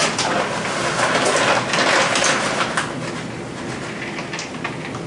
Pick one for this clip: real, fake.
real